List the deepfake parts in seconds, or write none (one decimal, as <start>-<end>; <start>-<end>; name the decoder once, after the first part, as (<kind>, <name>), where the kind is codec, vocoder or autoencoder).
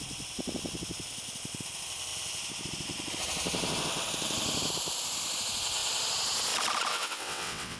6.9-7.8 (vocoder, WaveNeXt)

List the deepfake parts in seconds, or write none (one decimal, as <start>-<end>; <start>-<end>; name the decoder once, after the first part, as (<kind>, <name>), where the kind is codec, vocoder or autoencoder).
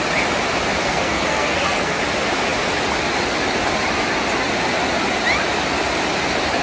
0.8-2.0 (codec, SNAC)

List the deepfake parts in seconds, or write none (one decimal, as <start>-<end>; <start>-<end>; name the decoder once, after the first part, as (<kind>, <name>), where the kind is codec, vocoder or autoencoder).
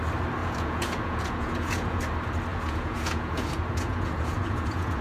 0.4-2.0 (vocoder, Vocos); 2.5-5.0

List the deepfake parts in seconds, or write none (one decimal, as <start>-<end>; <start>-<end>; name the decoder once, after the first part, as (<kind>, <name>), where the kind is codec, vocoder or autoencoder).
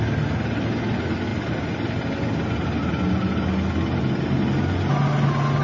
none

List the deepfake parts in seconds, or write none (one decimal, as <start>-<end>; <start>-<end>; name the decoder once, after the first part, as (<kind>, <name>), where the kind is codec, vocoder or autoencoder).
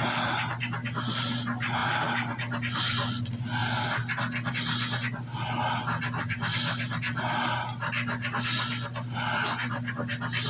none